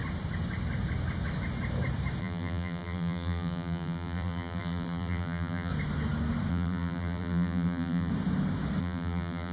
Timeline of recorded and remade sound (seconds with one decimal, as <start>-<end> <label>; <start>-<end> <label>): 0.0-2.2 recorded; 2.2-5.7 remade; 5.7-6.5 recorded; 6.5-8.1 remade; 8.1-8.8 recorded; 8.8-9.5 remade